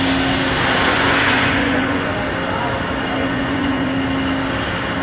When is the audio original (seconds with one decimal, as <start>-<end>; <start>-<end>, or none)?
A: 0.0-0.9; 2.1-3.2; 3.9-5.0